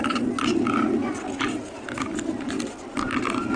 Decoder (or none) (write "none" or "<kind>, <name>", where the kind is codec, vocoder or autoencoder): none